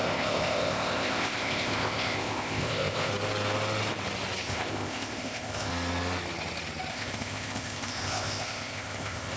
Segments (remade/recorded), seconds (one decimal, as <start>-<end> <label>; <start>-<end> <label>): 0.0-3.1 remade; 3.1-4.4 recorded; 4.4-5.7 remade; 5.7-6.9 recorded; 6.9-9.4 remade